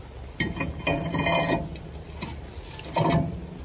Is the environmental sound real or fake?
real